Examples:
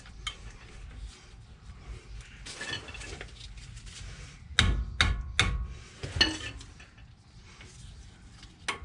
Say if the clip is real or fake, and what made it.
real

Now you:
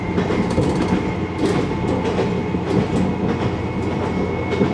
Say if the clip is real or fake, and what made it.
real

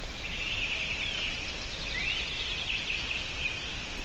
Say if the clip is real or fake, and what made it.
real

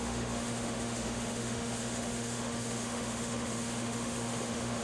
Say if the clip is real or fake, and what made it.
fake, autoencoder, DAC-VAE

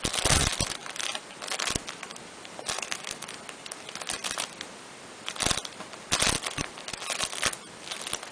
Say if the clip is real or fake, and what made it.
real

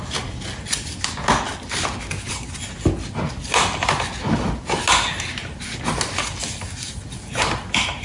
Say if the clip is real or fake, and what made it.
real